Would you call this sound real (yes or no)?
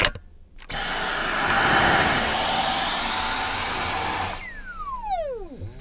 yes